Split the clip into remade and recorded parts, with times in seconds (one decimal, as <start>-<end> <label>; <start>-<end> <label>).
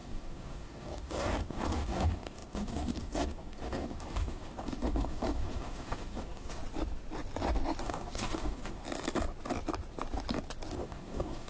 0.0-6.6 remade; 6.6-7.8 recorded; 7.8-8.8 remade; 8.8-10.7 recorded; 10.7-11.5 remade